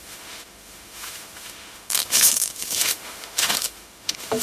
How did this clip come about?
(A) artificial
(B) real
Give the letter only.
A